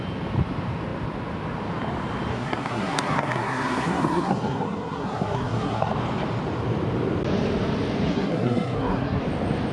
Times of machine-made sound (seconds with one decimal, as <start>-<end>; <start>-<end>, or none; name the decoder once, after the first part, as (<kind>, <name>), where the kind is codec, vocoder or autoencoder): 2.3-5.9 (codec, SNAC); 8.1-9.2